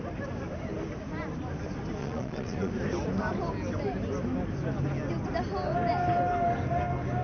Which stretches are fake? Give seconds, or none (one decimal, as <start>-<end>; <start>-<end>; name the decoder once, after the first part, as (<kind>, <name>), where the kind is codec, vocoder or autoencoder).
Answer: 2.0-2.7 (vocoder, Vocos)